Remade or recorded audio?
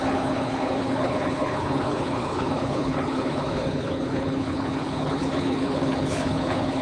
remade